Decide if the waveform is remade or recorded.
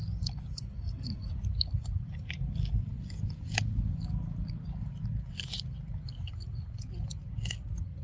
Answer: recorded